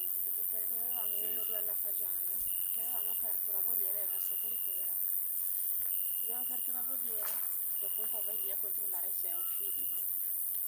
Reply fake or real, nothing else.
real